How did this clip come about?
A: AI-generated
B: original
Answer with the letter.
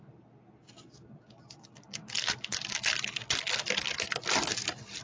B